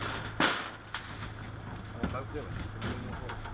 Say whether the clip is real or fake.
real